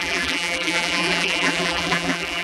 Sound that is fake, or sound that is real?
fake